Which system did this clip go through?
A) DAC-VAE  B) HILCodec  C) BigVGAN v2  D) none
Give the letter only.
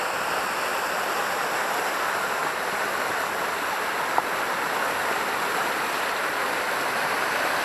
D